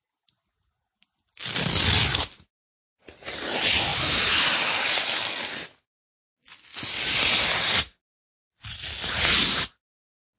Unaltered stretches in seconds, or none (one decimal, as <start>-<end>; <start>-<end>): 0.0-10.4